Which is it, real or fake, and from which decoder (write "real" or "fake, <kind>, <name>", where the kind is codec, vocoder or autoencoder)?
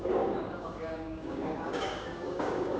fake, codec, DAC